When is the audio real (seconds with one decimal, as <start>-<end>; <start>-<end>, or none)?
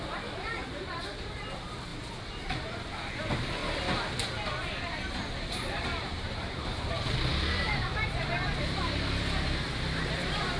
1.9-2.4; 3.6-5.5